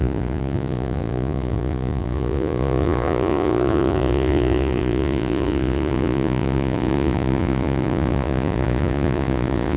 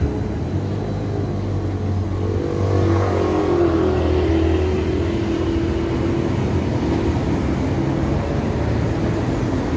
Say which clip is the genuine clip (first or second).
second